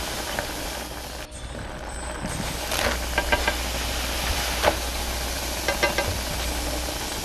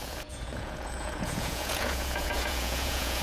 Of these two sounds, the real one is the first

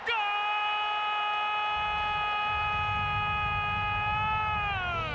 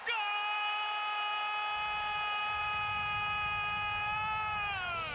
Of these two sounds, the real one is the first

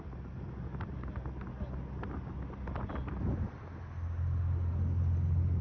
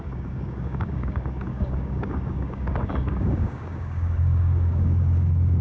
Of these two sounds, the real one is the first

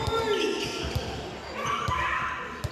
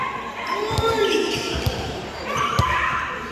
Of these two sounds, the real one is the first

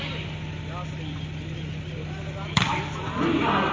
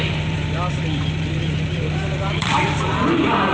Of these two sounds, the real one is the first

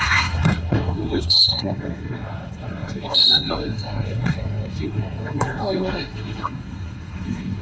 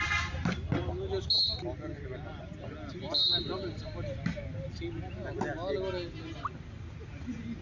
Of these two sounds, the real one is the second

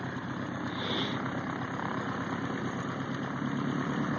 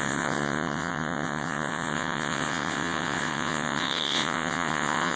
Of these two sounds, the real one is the first